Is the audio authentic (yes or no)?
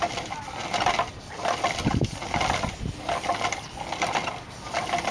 yes